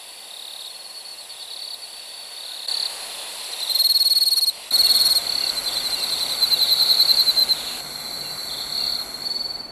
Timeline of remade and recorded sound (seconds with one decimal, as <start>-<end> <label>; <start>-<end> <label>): 0.0-9.7 recorded